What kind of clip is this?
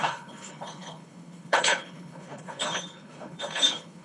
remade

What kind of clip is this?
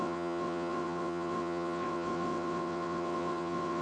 remade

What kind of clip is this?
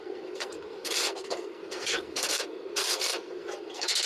remade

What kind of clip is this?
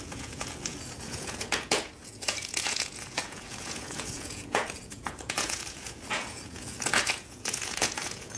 remade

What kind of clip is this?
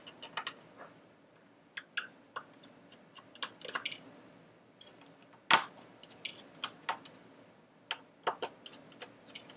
recorded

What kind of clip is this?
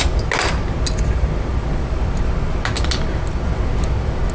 recorded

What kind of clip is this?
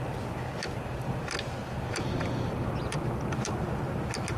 recorded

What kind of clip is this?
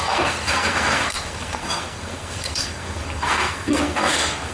remade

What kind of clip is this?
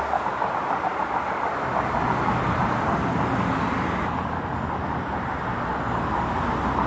recorded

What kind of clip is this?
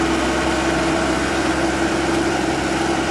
remade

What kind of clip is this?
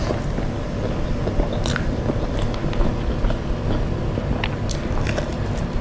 recorded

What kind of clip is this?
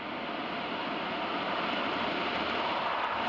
recorded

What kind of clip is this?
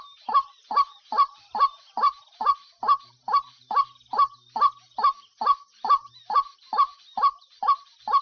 remade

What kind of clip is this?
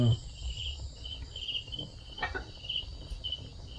remade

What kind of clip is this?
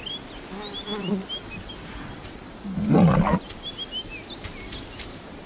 recorded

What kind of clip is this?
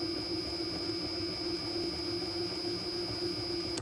recorded